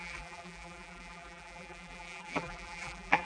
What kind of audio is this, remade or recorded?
remade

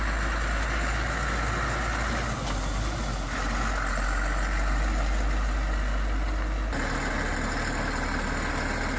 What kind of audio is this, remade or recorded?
recorded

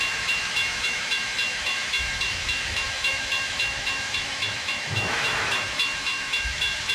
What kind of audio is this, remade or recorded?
remade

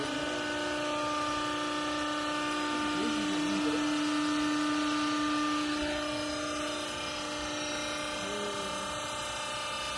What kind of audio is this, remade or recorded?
recorded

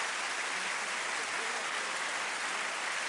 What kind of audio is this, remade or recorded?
recorded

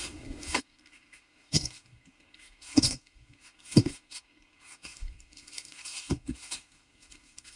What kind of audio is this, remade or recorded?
remade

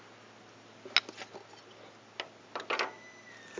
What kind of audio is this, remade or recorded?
recorded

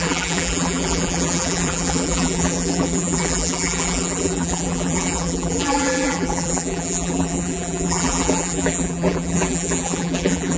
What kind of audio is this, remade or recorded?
remade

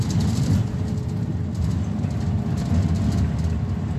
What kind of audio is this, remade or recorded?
recorded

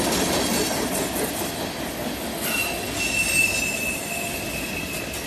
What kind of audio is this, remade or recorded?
recorded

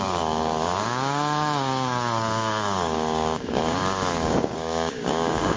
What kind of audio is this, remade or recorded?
remade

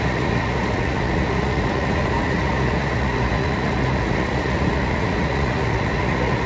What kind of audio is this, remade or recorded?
remade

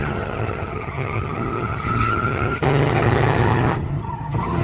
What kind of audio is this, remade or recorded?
remade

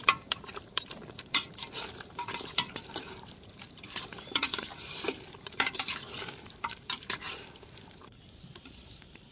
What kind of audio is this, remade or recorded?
remade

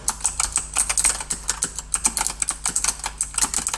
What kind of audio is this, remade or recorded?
recorded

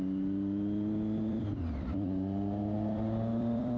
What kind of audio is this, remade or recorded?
remade